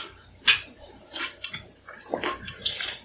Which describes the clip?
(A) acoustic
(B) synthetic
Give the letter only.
A